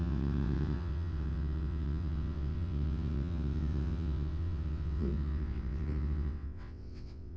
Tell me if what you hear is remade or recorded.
remade